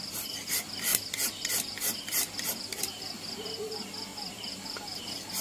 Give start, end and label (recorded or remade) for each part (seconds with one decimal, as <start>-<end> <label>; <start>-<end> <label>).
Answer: 0.0-0.9 recorded; 0.9-2.8 remade; 2.8-4.1 recorded; 4.1-5.0 remade; 5.0-5.4 recorded